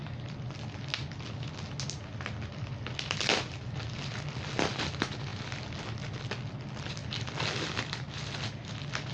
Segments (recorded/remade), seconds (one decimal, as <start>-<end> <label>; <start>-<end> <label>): 0.0-9.1 recorded